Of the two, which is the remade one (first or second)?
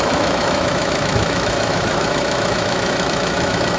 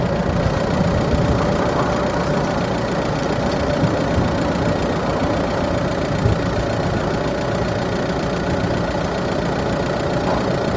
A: first